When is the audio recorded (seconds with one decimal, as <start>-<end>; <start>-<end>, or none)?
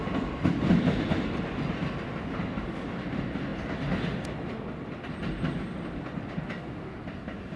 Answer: 0.0-7.6